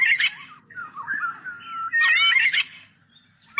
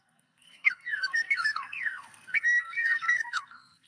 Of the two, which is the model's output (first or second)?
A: second